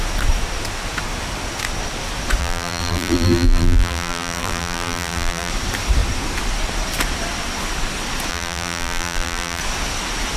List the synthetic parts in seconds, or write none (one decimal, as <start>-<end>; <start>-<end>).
2.4-5.5; 8.3-9.6